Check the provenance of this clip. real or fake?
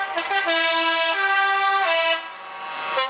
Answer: real